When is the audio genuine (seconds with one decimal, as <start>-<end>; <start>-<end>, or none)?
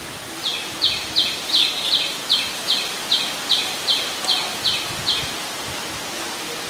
0.0-6.7